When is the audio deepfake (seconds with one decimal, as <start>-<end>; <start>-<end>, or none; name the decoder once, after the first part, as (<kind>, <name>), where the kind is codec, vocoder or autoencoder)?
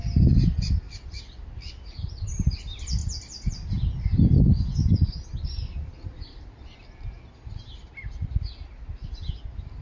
none